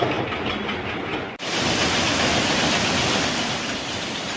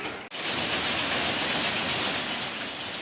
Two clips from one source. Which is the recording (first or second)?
second